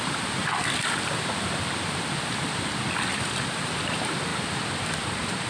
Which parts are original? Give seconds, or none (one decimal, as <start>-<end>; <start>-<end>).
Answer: 0.4-3.6; 4.3-4.8